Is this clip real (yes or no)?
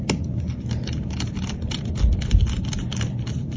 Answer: yes